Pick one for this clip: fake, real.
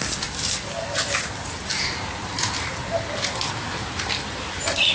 real